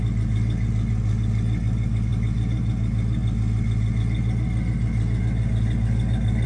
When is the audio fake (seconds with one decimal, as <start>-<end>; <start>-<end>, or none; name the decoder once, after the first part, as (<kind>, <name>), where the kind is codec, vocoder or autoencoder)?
none